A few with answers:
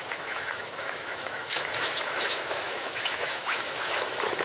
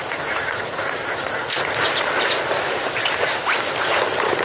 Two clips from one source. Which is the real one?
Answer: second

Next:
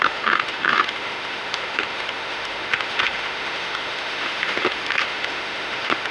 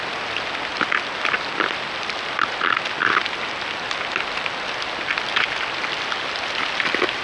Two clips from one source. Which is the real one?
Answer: second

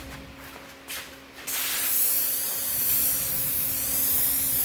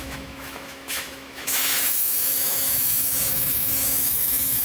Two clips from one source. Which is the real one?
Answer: first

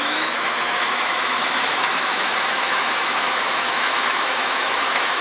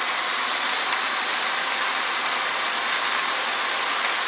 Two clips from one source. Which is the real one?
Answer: second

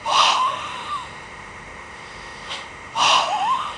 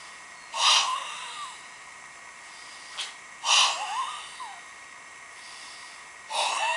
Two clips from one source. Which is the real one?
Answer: second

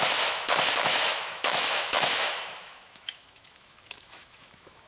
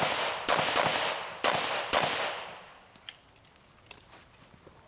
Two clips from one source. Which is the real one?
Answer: second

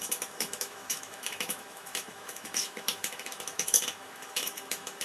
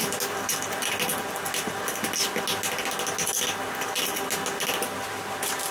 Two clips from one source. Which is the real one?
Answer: second